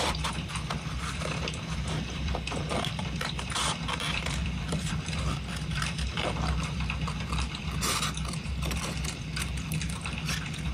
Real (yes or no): no